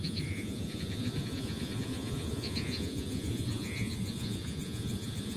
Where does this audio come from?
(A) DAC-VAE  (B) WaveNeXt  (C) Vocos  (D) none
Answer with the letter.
C